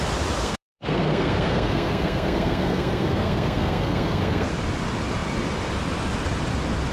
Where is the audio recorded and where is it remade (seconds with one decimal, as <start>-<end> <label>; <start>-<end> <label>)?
0.0-0.4 recorded; 0.4-4.5 remade; 4.5-6.9 recorded